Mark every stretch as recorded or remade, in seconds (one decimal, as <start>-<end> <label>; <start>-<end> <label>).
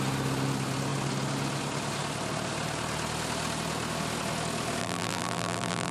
0.0-4.8 recorded; 4.8-5.9 remade